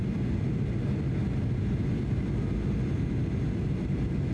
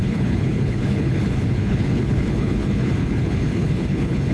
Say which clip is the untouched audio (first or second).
first